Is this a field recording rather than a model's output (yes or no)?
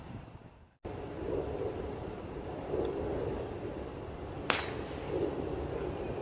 yes